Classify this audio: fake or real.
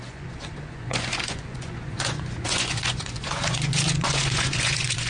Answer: fake